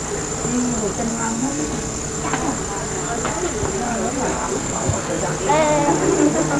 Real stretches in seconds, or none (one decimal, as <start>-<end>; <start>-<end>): 0.0-1.1; 2.0-4.3; 5.2-6.6